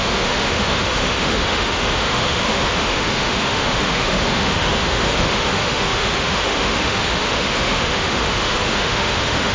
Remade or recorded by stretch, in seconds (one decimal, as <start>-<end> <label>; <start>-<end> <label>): 0.0-9.5 remade